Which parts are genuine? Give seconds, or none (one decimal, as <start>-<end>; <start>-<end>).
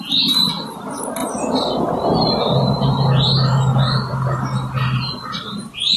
0.0-6.0